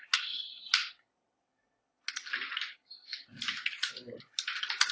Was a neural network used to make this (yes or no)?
no